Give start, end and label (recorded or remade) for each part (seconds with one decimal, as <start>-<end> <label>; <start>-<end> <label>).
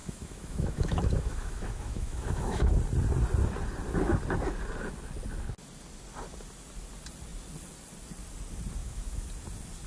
0.0-2.7 remade; 2.7-8.8 recorded; 8.8-9.3 remade; 9.3-9.9 recorded